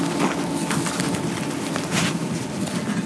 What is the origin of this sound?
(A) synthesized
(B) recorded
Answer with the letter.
B